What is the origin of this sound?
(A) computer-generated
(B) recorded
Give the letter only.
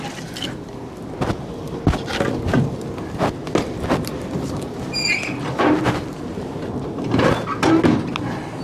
B